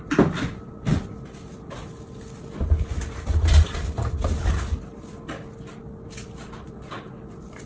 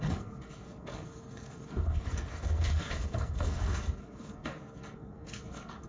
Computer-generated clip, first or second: second